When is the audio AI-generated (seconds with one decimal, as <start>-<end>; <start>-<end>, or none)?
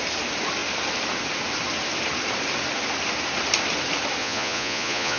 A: 4.2-5.2